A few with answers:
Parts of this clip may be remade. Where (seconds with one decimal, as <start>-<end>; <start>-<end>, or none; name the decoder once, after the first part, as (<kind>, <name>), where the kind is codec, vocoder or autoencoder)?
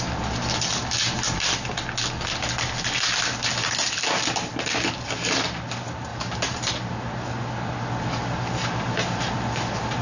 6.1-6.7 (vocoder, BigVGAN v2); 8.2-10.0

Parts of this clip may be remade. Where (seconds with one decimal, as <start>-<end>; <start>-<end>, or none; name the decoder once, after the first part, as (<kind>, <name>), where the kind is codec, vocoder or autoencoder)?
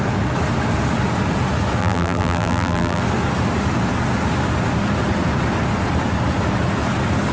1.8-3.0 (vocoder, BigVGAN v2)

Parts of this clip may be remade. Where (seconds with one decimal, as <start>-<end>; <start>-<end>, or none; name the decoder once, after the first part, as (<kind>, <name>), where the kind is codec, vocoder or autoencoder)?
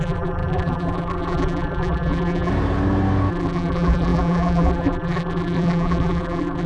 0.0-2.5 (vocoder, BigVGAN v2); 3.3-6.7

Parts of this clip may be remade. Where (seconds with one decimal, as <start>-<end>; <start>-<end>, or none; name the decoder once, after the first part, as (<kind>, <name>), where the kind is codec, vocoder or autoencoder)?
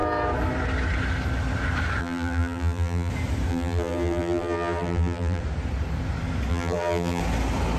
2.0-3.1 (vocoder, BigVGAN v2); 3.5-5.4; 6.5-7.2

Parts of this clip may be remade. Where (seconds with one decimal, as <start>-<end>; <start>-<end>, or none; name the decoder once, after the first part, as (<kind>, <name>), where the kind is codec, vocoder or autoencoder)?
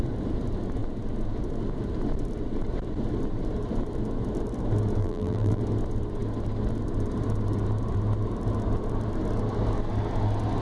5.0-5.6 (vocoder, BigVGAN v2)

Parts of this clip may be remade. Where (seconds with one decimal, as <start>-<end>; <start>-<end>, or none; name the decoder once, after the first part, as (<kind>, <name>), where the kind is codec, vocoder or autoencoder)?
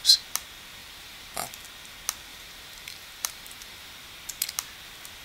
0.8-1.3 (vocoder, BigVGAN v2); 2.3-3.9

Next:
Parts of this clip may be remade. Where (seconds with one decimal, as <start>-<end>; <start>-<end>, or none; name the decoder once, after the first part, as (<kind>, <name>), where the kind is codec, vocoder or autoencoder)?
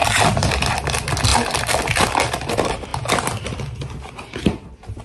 none